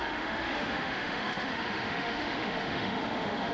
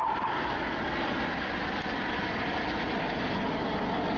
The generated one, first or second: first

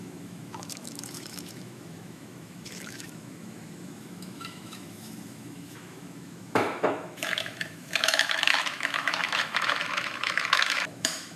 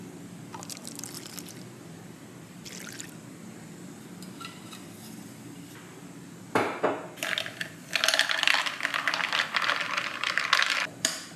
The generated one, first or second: first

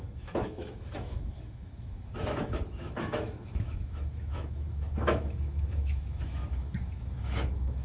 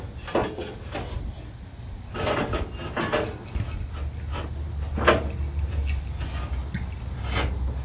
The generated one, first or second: first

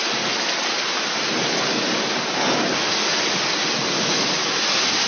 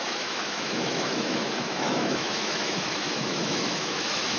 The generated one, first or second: second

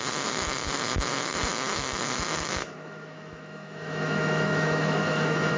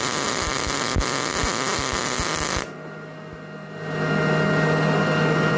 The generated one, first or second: first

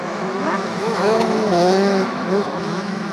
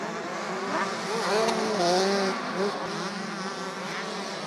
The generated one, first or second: first